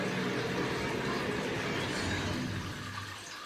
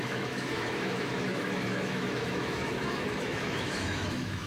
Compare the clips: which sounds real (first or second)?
first